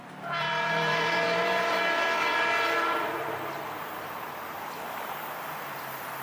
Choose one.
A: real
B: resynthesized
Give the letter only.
B